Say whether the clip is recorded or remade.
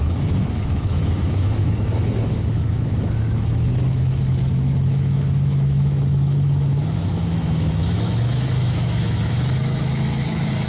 remade